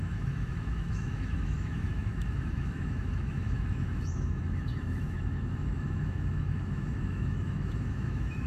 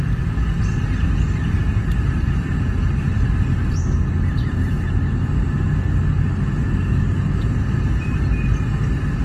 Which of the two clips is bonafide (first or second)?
second